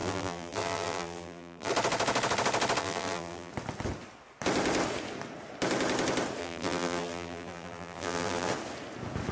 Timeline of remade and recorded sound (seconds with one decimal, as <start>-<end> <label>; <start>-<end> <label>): 0.0-1.7 remade; 1.7-2.8 recorded; 2.8-3.5 remade; 3.5-6.4 recorded; 6.4-8.5 remade; 8.5-9.3 recorded